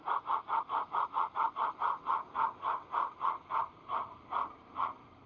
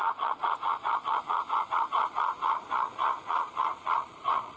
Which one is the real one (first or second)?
first